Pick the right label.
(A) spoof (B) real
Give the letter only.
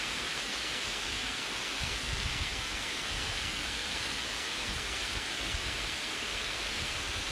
A